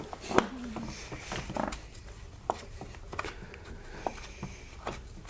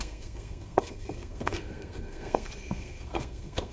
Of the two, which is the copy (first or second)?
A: second